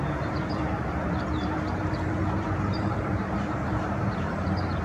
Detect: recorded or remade remade